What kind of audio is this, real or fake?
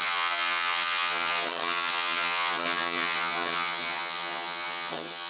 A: fake